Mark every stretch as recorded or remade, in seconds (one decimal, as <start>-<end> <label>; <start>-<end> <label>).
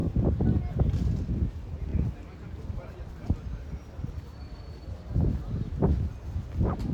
0.0-6.9 recorded